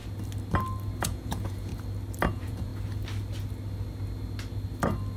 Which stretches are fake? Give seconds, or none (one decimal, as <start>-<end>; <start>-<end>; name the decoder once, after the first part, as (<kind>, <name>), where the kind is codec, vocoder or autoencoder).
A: 1.0-1.7 (vocoder, Vocos); 2.3-2.7